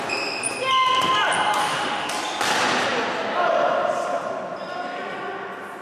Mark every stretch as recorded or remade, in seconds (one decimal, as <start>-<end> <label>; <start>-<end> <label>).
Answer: 0.0-1.6 recorded; 1.6-2.1 remade; 2.1-5.8 recorded